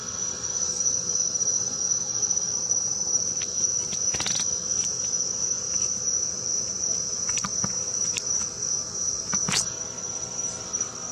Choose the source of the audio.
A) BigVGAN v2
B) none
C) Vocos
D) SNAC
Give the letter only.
A